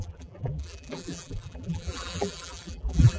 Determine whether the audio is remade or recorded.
remade